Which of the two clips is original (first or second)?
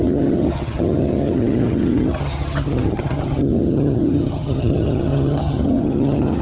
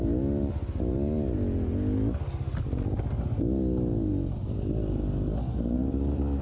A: second